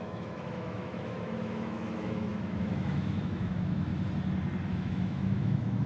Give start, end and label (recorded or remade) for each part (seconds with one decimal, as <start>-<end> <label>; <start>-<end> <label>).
0.0-3.9 remade; 3.9-4.7 recorded; 4.7-5.9 remade